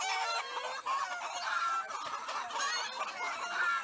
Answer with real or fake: real